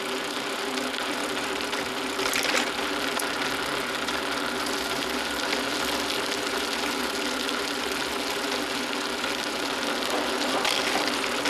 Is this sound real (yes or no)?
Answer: yes